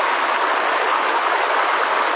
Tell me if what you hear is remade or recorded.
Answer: recorded